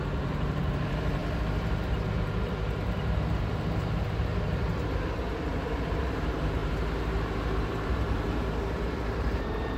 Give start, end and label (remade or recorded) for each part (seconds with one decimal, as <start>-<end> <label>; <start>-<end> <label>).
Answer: 0.0-9.8 remade